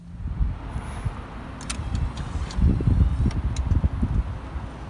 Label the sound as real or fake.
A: real